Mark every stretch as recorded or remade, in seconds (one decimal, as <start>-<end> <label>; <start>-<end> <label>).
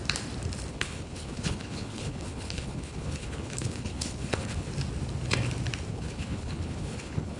0.0-0.7 recorded; 0.7-4.7 remade; 4.7-5.9 recorded; 5.9-7.4 remade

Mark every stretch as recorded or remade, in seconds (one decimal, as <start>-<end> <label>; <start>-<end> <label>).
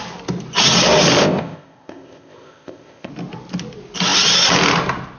0.0-1.2 recorded; 1.2-3.1 remade; 3.1-5.2 recorded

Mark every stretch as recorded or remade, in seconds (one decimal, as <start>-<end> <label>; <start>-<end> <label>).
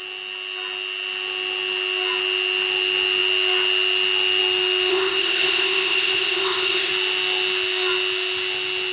0.0-4.9 recorded; 4.9-6.9 remade; 6.9-8.9 recorded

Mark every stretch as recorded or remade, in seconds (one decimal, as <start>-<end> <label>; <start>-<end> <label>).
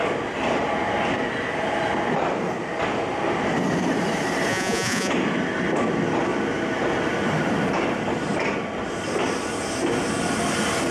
0.0-4.5 recorded; 4.5-5.1 remade; 5.1-10.9 recorded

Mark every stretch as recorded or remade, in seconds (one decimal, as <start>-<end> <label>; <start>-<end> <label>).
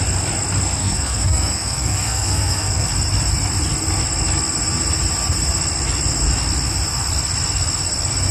0.0-0.8 recorded; 0.8-2.9 remade; 2.9-8.3 recorded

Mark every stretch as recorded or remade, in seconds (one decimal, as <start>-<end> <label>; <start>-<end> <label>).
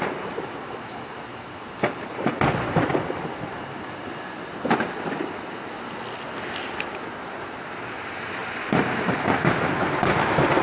0.0-4.1 remade; 4.1-7.4 recorded; 7.4-8.4 remade; 8.4-9.1 recorded; 9.1-10.6 remade